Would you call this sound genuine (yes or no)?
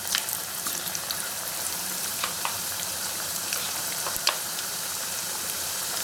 no